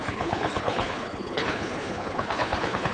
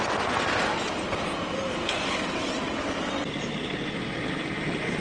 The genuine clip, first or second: second